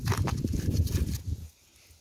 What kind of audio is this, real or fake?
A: real